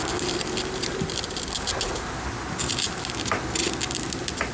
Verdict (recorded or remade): recorded